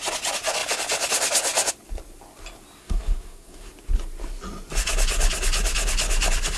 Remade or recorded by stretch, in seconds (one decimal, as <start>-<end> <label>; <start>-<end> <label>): 0.0-2.8 recorded; 2.8-3.7 remade; 3.7-6.6 recorded

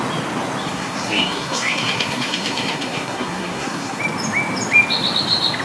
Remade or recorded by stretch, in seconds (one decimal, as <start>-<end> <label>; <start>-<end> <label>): 0.0-0.6 recorded; 0.6-4.0 remade; 4.0-5.6 recorded

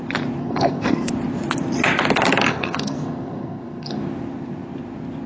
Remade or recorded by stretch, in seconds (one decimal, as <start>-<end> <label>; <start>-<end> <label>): 0.0-0.4 recorded; 0.4-1.1 remade; 1.1-2.5 recorded; 2.5-4.0 remade; 4.0-5.3 recorded

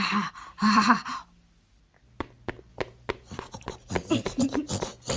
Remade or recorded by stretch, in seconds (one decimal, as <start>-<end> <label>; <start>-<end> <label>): 0.0-5.2 recorded

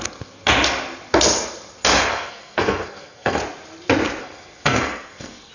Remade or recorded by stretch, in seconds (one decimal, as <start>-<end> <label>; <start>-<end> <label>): 0.0-2.1 recorded; 2.1-3.4 remade; 3.4-4.2 recorded; 4.2-5.5 remade